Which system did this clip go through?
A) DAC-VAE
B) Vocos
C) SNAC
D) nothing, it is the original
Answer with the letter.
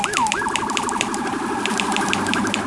D